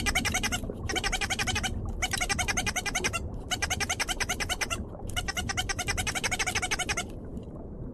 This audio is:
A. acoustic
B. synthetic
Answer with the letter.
B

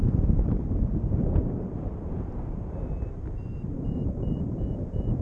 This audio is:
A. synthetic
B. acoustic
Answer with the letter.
A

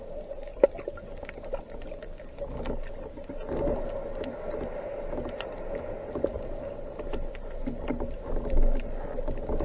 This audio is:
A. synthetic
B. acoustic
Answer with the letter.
B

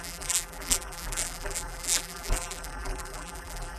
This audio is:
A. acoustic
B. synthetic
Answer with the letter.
B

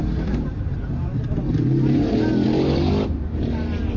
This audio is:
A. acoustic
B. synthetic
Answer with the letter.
A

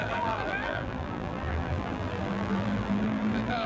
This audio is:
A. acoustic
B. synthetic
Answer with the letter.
B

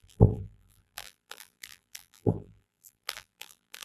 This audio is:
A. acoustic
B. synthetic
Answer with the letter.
B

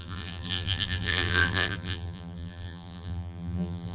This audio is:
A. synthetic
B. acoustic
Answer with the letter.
A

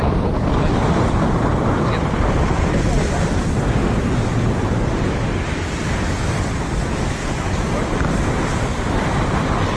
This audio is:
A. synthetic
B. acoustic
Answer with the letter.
B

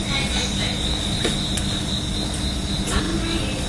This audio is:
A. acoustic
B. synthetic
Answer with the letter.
A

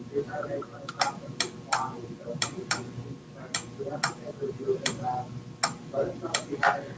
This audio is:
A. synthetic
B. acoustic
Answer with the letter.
B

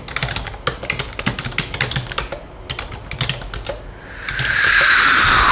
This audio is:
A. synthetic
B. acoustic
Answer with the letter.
B